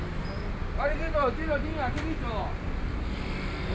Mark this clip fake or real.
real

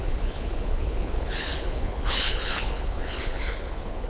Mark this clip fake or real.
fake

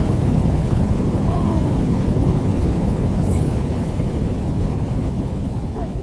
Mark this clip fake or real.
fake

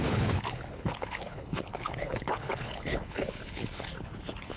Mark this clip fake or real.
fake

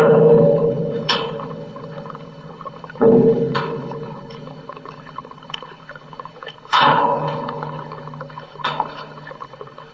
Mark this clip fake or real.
fake